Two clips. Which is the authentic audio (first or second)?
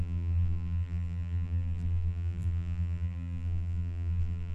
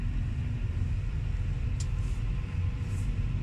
second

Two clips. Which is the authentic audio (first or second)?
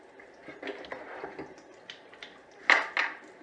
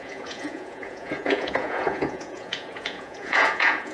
first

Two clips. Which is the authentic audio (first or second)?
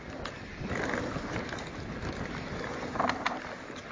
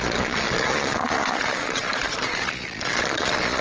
first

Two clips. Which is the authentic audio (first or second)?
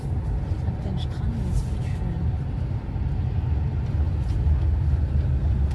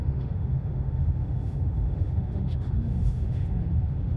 first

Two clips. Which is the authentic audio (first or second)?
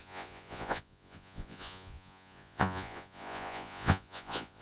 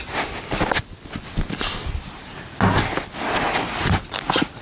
second